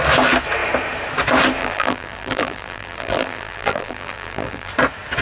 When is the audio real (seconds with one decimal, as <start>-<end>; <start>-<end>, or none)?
0.0-1.6; 4.7-5.2